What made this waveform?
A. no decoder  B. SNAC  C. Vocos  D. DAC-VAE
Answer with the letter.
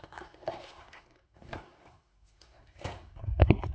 B